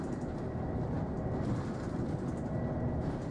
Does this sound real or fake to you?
real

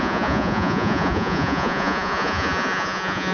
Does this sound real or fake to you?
fake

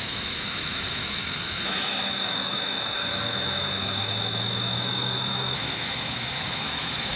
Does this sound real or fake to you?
fake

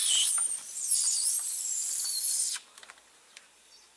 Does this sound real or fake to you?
fake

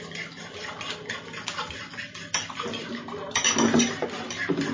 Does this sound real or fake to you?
real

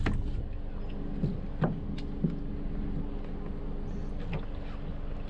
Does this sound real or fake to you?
real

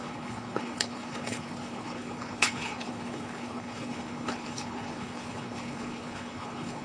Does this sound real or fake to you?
fake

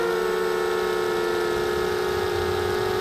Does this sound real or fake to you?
real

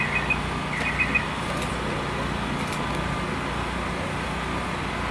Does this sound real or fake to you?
real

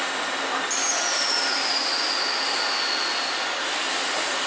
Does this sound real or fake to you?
real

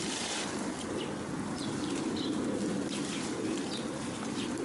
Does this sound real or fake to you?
fake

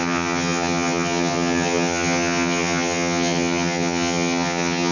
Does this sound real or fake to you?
fake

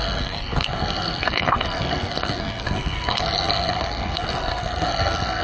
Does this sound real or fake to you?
fake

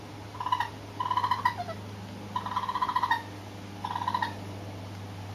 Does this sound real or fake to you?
real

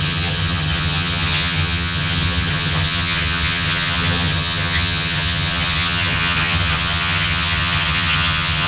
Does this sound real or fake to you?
fake